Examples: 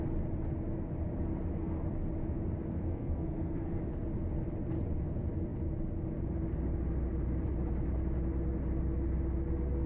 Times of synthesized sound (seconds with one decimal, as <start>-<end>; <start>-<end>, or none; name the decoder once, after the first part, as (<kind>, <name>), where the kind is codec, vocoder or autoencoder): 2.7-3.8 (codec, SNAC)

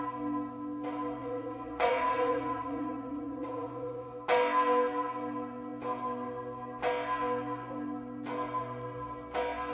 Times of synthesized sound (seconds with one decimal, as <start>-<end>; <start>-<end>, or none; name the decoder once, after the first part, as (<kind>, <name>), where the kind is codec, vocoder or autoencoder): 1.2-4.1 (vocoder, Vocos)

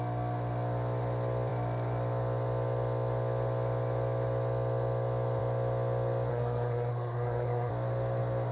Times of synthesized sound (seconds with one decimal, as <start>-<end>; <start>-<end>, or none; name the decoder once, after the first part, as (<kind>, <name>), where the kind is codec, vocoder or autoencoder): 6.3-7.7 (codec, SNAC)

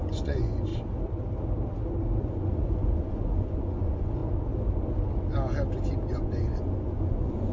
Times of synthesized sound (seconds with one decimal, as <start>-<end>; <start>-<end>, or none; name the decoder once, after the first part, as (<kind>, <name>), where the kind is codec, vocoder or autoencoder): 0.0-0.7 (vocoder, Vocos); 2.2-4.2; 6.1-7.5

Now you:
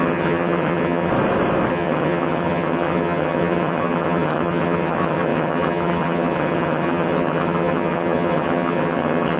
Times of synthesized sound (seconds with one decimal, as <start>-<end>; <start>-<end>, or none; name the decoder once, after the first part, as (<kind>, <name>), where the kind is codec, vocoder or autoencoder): 0.0-1.1 (vocoder, HiFi-GAN); 1.7-9.4